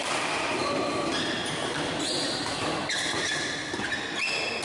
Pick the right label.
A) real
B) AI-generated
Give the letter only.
A